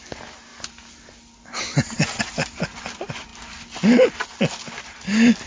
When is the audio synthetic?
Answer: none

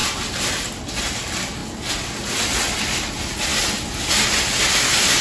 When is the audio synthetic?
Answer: none